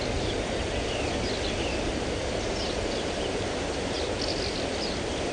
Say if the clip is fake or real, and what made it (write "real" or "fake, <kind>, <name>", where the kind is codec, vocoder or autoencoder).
real